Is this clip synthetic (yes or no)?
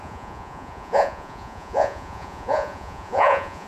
yes